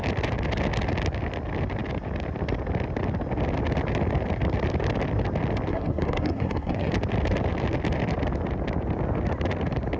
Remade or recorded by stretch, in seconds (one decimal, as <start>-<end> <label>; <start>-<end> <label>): 0.0-5.7 recorded; 5.7-6.9 remade; 6.9-10.0 recorded